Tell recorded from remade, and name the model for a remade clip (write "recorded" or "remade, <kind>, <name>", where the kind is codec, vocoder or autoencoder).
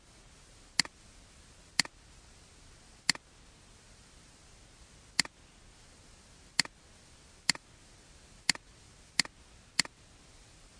recorded